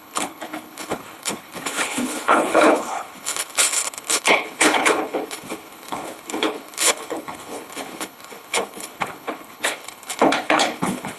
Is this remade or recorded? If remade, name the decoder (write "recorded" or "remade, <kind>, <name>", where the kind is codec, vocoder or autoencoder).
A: remade, codec, HILCodec